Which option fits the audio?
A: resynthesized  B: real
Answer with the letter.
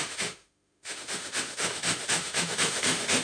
A